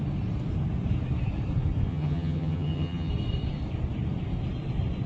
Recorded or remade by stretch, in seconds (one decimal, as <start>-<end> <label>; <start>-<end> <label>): 0.0-1.9 recorded; 1.9-3.1 remade; 3.1-5.1 recorded

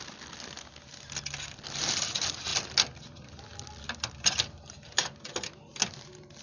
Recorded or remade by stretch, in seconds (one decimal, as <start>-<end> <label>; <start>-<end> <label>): 0.0-6.4 recorded

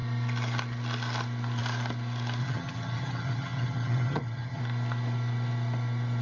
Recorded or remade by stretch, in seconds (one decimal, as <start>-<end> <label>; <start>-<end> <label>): 0.0-2.4 recorded; 2.4-4.6 remade; 4.6-6.2 recorded

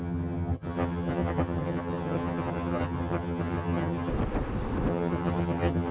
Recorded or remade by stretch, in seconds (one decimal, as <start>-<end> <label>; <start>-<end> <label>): 0.0-4.1 remade; 4.1-4.9 recorded; 4.9-5.9 remade